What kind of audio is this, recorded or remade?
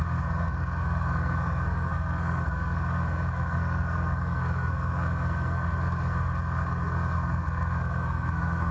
remade